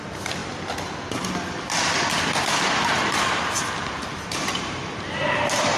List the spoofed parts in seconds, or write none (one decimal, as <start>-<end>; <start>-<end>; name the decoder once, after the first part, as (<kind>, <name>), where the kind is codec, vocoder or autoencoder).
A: 0.0-0.4 (vocoder, BigVGAN v2); 3.9-5.8